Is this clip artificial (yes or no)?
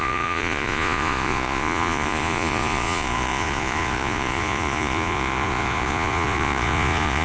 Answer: yes